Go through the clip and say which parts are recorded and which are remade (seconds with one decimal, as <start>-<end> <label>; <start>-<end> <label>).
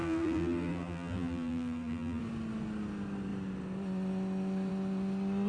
0.0-2.2 remade; 2.2-5.5 recorded